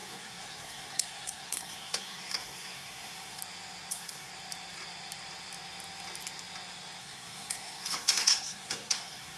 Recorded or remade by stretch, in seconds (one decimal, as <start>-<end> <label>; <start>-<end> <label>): 0.0-3.4 remade; 3.4-3.9 recorded; 3.9-4.3 remade; 4.3-7.0 recorded; 7.0-9.4 remade